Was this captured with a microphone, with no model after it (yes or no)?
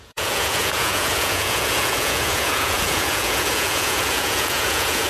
no